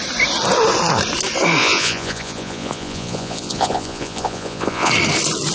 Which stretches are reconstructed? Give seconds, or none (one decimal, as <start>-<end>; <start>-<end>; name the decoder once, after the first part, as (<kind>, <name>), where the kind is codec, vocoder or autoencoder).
1.6-4.9 (vocoder, Vocos)